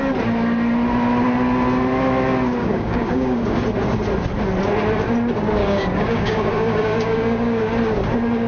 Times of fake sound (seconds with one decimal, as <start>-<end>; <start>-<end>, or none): 2.6-3.6; 5.6-7.7